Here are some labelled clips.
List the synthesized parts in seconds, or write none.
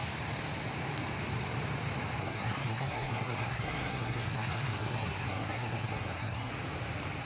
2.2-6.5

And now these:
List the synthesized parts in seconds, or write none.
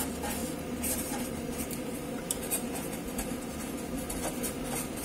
0.4-3.4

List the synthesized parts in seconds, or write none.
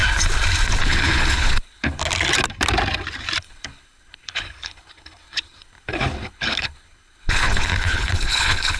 0.8-2.0; 3.4-8.8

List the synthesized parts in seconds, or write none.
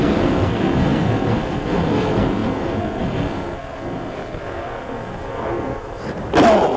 0.0-6.0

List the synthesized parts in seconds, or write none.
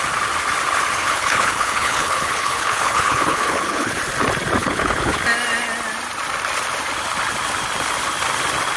1.0-4.0; 4.6-5.2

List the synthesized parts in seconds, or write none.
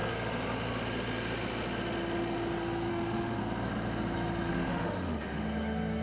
2.9-3.4; 4.5-6.0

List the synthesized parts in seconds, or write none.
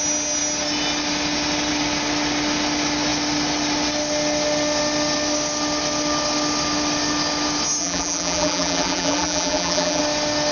7.8-10.0